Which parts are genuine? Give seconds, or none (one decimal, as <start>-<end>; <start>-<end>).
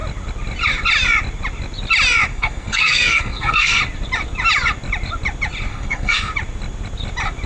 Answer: 0.0-2.3; 3.8-5.7; 6.3-7.5